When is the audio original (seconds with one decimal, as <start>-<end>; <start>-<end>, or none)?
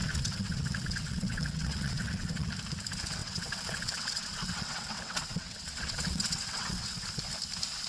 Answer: 2.5-3.2; 7.0-7.9